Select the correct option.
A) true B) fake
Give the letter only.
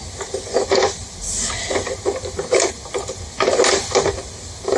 A